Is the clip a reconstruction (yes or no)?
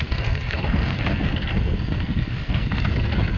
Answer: yes